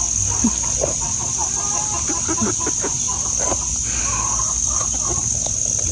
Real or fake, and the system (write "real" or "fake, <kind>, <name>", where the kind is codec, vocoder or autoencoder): real